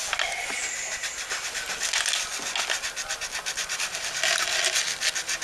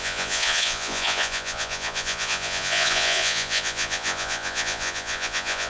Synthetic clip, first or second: second